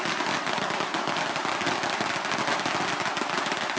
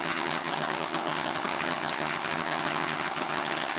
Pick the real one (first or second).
first